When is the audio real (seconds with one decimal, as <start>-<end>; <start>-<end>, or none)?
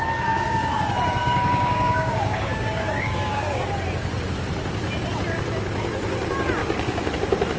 0.7-1.2; 3.7-6.6; 7.1-7.6